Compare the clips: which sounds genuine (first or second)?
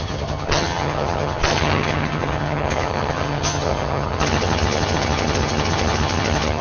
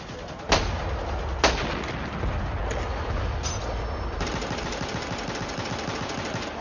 second